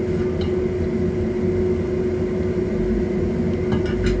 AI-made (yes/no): no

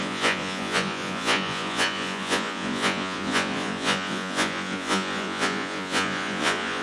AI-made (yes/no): yes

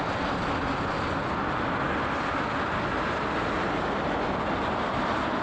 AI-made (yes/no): no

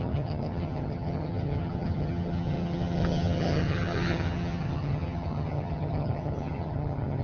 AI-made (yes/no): yes